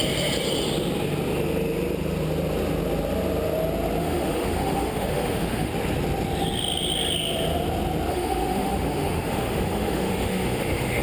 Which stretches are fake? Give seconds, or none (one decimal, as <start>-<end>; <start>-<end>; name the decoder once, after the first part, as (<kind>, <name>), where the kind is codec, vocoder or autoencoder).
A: 4.0-5.7 (autoencoder, DAC-VAE); 8.1-11.0